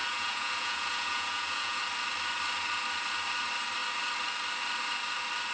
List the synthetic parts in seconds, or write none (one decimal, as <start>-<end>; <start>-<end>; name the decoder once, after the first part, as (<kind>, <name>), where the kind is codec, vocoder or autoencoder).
0.0-1.8 (vocoder, Vocos)